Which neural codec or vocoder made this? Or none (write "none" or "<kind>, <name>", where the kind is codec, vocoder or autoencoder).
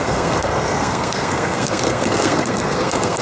codec, SNAC